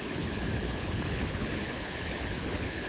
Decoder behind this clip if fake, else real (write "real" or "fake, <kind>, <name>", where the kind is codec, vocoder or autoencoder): fake, codec, HILCodec